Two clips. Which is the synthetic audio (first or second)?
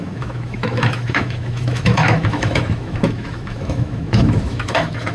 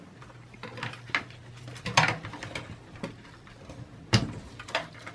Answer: first